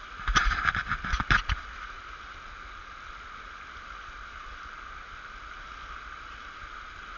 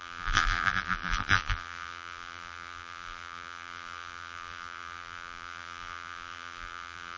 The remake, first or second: second